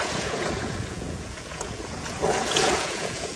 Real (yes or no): no